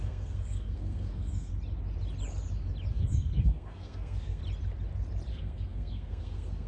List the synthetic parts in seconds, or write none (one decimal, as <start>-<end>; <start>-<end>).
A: 0.0-1.5; 2.9-4.4; 5.3-6.7